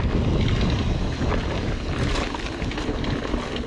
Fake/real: real